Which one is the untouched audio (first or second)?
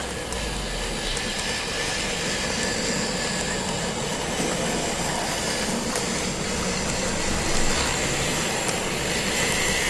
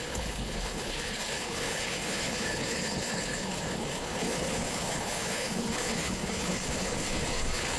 first